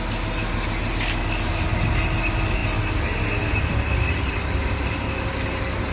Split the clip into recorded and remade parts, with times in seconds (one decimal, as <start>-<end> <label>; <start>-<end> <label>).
0.0-5.9 recorded